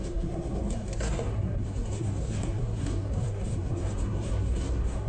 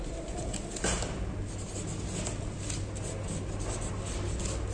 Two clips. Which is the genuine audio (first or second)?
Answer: second